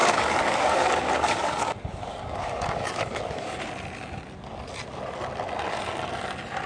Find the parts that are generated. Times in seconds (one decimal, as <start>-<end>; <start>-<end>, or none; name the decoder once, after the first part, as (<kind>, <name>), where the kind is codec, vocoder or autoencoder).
0.0-3.6 (codec, DAC)